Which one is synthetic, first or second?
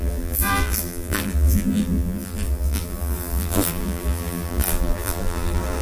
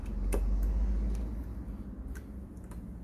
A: first